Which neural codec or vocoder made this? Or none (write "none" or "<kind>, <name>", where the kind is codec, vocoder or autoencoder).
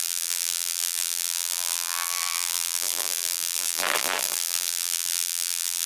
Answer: vocoder, BigVGAN v2